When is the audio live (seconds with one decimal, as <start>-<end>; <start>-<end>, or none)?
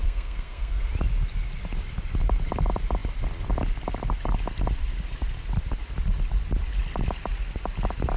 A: 0.9-8.2